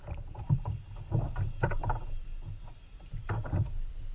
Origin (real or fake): fake